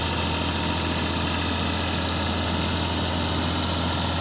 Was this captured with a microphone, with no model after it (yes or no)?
yes